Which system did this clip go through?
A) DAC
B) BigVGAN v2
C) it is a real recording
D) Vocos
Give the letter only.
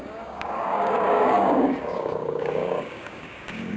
A